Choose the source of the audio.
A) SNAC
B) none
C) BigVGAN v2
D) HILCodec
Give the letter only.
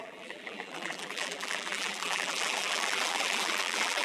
C